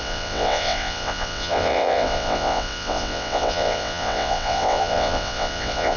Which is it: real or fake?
fake